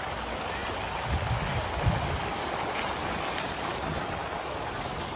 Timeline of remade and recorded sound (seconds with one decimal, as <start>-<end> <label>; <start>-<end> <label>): 0.0-5.2 recorded